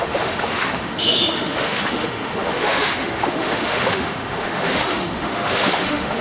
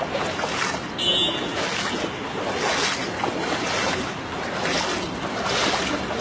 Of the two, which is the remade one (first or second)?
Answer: first